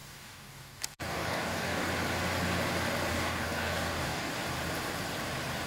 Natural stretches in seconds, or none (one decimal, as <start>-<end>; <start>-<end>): 1.9-3.1; 4.3-5.7

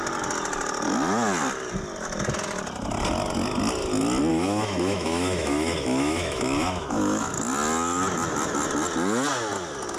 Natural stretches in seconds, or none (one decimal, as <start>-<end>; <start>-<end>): 0.0-4.3; 7.3-10.0